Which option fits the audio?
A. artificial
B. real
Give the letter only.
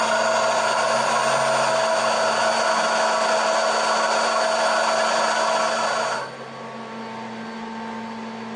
B